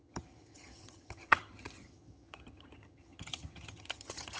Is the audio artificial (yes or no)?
yes